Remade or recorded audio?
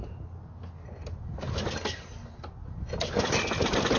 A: recorded